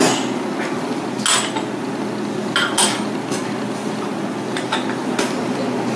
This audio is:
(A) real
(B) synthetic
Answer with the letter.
A